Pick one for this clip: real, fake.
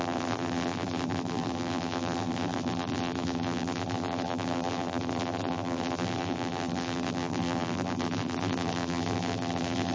fake